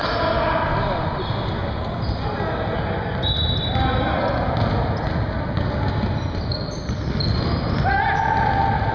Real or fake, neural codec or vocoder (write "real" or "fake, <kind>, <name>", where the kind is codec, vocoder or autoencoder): real